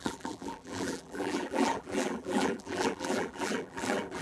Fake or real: fake